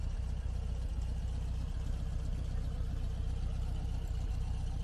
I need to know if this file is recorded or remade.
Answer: recorded